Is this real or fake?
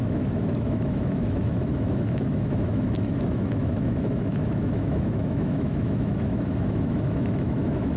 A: fake